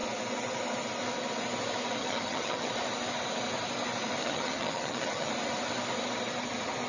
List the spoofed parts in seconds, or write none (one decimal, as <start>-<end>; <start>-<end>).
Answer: 2.0-2.7; 4.2-5.3